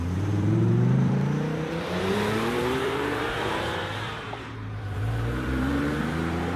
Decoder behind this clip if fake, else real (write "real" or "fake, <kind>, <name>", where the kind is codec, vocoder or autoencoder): fake, vocoder, BigVGAN v2